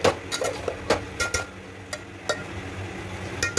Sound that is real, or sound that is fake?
real